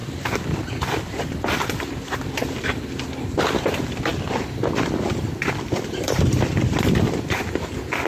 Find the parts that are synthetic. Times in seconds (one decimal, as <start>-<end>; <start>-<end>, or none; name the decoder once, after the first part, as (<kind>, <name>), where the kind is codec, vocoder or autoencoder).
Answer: 4.1-6.9 (vocoder, BigVGAN v2)